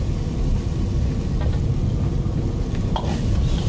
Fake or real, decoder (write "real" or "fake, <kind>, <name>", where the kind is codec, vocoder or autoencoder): real